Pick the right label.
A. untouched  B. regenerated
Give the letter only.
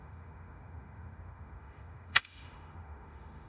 B